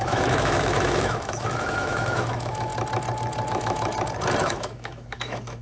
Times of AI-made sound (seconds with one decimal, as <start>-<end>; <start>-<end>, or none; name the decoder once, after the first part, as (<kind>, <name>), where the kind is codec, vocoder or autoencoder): 0.0-2.7 (autoencoder, DAC-VAE); 3.5-3.9; 4.4-5.6